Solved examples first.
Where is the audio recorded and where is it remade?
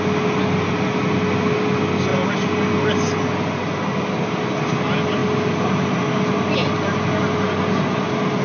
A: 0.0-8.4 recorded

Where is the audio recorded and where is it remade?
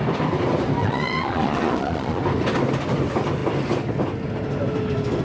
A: 0.0-0.8 recorded; 0.8-2.2 remade; 2.2-5.2 recorded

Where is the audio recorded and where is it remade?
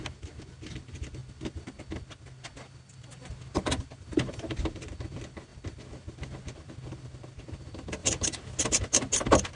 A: 0.0-9.6 recorded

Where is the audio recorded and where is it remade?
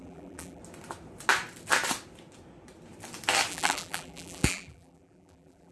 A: 0.0-0.6 remade; 0.6-3.5 recorded; 3.5-5.7 remade